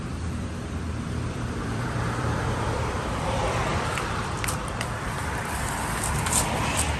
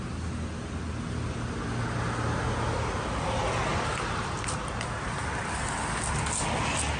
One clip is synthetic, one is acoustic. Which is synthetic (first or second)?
first